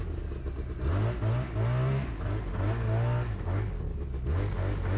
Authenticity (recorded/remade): recorded